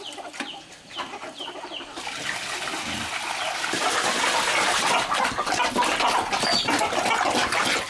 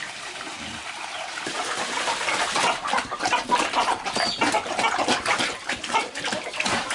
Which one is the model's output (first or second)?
second